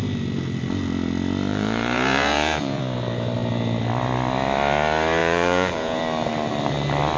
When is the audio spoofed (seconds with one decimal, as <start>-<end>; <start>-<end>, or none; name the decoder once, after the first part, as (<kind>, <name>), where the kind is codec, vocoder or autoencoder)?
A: 1.5-2.8 (vocoder, Vocos); 5.2-6.0